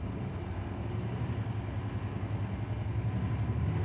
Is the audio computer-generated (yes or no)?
no